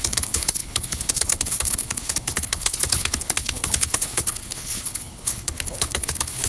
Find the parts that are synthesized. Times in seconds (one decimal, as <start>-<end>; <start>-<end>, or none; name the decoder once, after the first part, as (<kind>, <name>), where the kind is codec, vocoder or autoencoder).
0.0-6.5 (codec, HILCodec)